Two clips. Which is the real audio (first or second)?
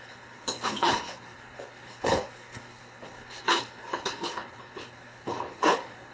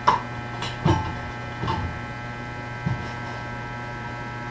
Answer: second